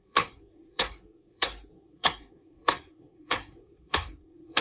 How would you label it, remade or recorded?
remade